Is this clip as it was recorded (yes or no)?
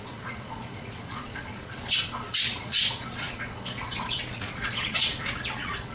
no